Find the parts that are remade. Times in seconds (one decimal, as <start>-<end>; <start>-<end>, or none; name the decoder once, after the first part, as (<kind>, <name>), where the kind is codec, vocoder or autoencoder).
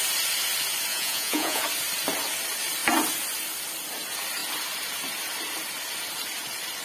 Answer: 0.9-1.6 (vocoder, Vocos)